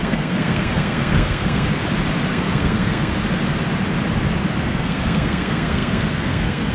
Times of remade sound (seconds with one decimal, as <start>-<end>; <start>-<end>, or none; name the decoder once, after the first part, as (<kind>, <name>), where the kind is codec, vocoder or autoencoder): 0.0-1.8 (codec, SNAC); 2.3-3.1; 4.6-6.7